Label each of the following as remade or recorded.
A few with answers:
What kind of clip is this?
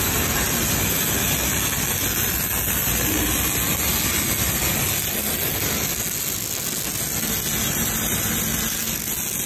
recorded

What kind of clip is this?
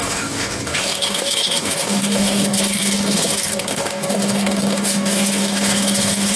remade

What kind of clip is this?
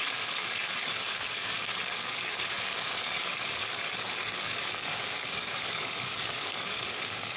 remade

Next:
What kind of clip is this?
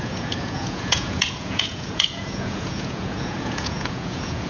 remade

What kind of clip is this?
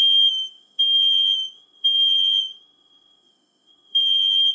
remade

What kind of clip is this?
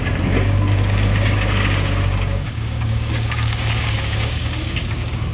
remade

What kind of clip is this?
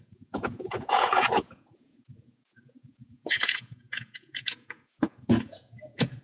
remade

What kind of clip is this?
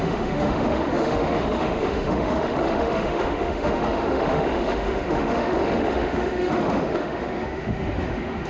remade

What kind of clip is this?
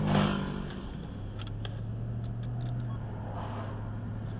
recorded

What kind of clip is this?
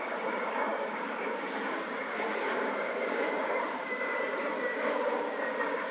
remade